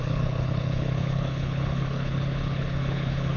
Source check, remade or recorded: remade